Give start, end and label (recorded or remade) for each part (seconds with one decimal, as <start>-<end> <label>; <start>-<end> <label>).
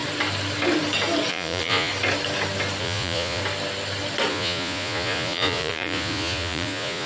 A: 0.0-1.3 recorded; 1.3-1.9 remade; 1.9-2.8 recorded; 2.8-3.4 remade; 3.4-4.3 recorded; 4.3-7.1 remade